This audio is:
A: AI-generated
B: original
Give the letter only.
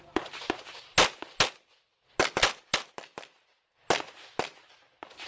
B